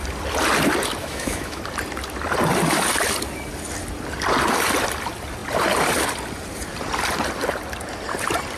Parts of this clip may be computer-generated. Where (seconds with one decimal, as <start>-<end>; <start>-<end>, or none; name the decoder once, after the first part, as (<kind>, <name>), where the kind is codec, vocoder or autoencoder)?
1.0-1.6 (autoencoder, DAC-VAE)